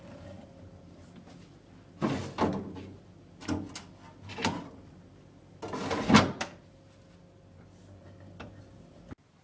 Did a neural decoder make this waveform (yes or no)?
no